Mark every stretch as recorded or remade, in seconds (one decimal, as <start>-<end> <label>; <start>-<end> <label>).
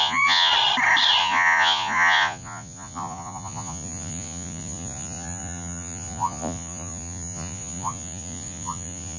0.0-0.5 remade; 0.5-1.2 recorded; 1.2-9.2 remade